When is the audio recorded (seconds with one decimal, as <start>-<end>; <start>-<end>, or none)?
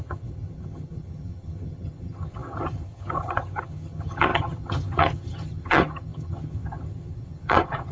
none